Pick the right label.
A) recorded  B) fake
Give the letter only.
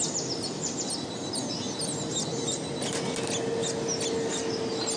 A